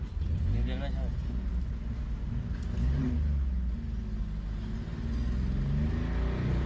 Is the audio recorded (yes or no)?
yes